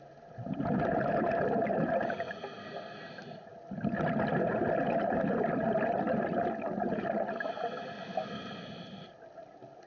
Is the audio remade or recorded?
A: recorded